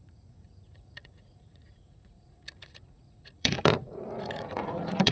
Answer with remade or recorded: remade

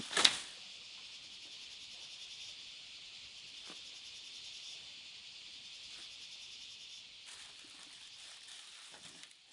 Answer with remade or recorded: recorded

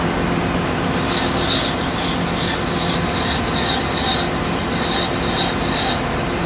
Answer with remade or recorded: recorded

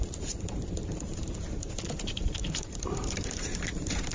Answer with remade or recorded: remade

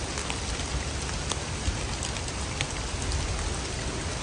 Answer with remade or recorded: recorded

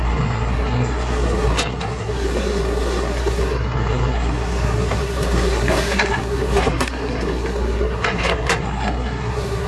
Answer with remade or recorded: remade